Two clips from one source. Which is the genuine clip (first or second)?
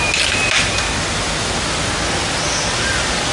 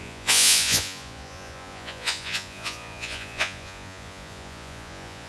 first